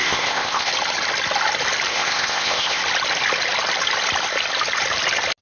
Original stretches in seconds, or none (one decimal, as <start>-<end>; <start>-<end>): 0.7-1.9; 2.8-5.4